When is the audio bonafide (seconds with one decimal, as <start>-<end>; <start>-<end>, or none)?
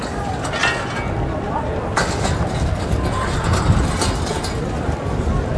0.0-5.6